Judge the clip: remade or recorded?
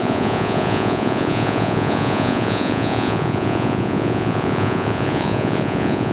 remade